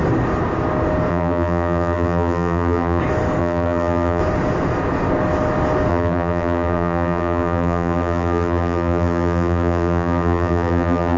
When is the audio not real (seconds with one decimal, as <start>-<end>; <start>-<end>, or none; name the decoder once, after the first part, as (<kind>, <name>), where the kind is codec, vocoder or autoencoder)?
1.1-3.0 (vocoder, BigVGAN v2); 3.4-4.2; 5.9-11.2